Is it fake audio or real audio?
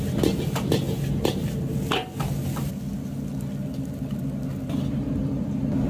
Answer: real